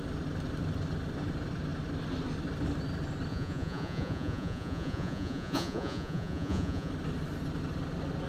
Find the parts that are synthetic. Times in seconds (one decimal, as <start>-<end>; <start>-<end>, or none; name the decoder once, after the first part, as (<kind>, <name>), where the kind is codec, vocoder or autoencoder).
3.3-6.9 (vocoder, Vocos)